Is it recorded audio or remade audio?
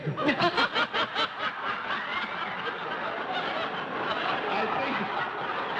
recorded